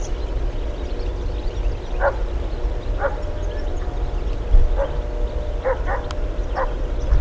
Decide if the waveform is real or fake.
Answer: real